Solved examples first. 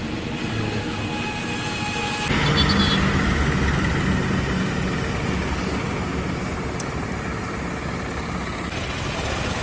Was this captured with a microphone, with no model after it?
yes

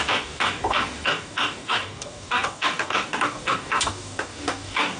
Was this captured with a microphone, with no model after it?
no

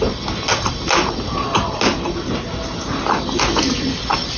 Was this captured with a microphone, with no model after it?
yes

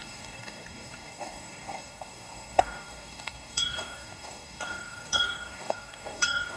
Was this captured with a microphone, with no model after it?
no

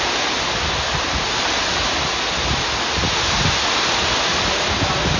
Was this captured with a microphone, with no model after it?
yes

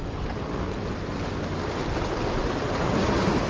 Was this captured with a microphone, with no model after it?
yes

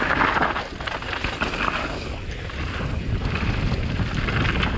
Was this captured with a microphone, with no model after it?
yes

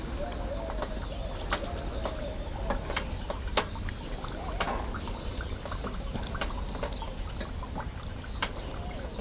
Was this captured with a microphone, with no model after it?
yes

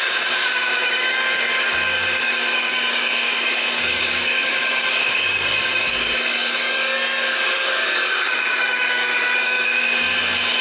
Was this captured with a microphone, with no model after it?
no